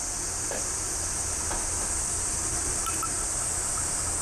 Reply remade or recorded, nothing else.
recorded